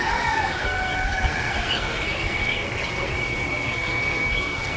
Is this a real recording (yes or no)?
no